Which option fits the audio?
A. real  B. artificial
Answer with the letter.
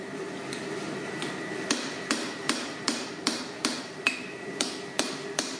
B